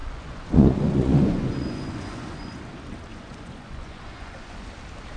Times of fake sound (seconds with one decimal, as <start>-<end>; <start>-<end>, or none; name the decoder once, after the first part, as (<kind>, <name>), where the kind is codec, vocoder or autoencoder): 0.0-2.6 (vocoder, Vocos); 3.1-4.7